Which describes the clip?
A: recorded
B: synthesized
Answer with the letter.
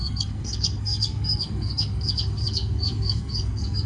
B